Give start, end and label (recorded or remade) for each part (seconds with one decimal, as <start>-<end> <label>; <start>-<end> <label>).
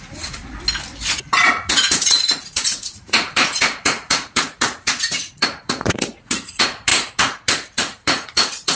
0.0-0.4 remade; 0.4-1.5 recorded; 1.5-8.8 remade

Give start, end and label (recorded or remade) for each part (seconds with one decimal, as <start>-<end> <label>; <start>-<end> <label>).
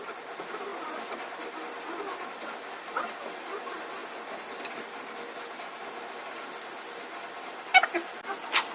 0.0-8.7 recorded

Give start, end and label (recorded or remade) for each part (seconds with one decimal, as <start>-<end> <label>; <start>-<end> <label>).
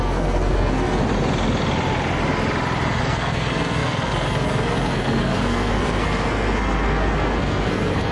0.0-1.0 remade; 1.0-3.0 recorded; 3.0-8.1 remade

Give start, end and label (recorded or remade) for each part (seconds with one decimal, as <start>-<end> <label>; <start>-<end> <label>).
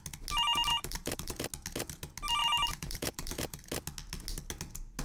0.0-0.7 recorded; 0.7-1.3 remade; 1.3-2.4 recorded; 2.4-3.6 remade; 3.6-5.0 recorded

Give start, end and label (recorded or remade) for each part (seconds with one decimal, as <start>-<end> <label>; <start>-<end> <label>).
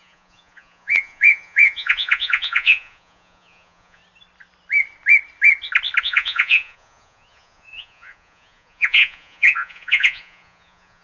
0.0-4.0 remade; 4.0-6.0 recorded; 6.0-11.0 remade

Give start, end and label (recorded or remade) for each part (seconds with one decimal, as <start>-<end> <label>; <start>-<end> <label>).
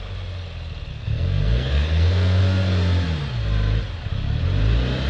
0.0-0.9 recorded; 0.9-2.4 remade; 2.4-5.1 recorded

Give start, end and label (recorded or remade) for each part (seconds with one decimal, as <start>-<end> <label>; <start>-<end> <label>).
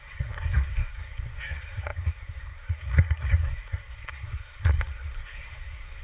0.0-6.0 remade